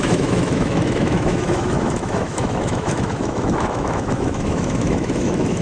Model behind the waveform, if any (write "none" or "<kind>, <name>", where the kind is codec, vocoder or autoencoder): autoencoder, DAC-VAE